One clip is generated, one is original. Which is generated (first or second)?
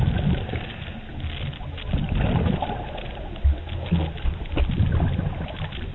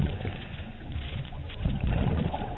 second